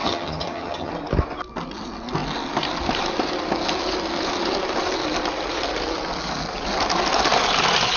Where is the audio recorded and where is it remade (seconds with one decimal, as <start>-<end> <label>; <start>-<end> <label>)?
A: 0.0-0.9 remade; 0.9-8.0 recorded